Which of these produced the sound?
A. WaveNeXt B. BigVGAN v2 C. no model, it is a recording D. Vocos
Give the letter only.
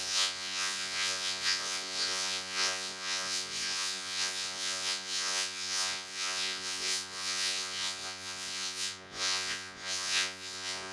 D